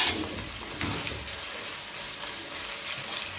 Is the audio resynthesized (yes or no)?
no